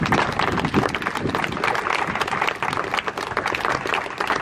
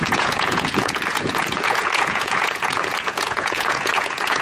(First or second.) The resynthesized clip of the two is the second